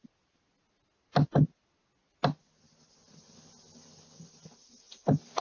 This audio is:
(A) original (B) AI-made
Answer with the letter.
A